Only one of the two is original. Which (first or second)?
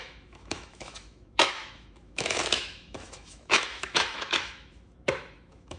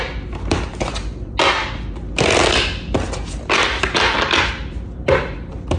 second